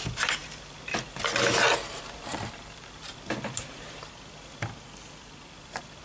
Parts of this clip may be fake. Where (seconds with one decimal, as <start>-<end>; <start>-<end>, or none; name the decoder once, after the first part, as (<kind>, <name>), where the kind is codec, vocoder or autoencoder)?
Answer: 0.0-6.0 (vocoder, BigVGAN v2)

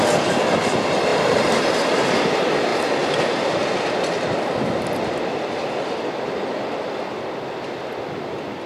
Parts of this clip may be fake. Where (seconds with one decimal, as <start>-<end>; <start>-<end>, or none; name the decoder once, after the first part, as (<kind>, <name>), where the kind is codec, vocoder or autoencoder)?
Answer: none

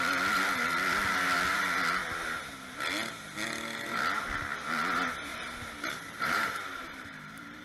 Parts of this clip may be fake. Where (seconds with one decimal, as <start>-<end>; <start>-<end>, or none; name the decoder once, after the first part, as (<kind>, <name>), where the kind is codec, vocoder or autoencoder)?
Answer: 5.3-7.6 (vocoder, BigVGAN v2)

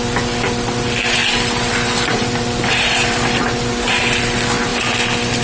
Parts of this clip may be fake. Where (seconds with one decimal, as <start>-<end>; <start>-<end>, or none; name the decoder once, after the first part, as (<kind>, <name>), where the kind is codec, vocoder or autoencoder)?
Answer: 1.2-3.7 (vocoder, BigVGAN v2); 4.7-5.4

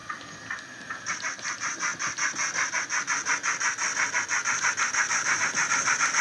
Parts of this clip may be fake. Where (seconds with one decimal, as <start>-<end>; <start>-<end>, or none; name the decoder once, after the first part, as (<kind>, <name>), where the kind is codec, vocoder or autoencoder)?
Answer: 1.1-1.9 (vocoder, BigVGAN v2); 5.1-6.2

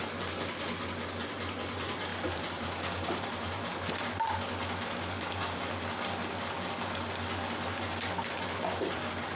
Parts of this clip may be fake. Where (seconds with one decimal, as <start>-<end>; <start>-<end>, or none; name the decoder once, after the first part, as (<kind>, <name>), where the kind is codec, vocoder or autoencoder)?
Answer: 2.1-4.1 (vocoder, BigVGAN v2)

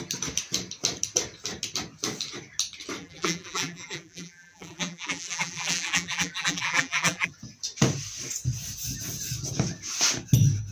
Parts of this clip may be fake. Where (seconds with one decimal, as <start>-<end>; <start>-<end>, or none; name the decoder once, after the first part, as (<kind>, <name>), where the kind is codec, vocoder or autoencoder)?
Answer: 3.0-7.3 (vocoder, BigVGAN v2)

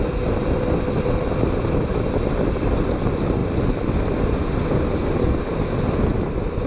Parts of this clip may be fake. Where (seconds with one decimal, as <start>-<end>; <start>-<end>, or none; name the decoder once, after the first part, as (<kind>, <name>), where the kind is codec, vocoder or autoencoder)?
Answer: none